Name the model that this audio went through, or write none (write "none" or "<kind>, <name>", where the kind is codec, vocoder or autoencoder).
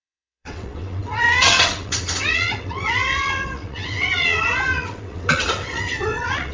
vocoder, WaveNeXt